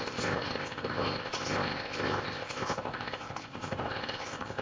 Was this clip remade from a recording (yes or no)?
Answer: yes